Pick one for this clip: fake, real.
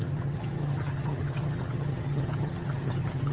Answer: fake